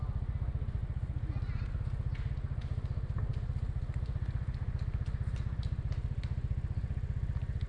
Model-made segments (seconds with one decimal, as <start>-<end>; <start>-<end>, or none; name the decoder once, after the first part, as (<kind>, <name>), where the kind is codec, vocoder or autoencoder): none